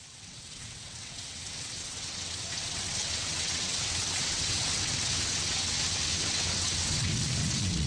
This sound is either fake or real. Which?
fake